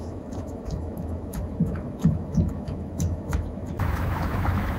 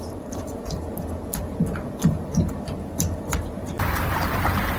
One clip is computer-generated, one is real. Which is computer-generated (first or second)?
first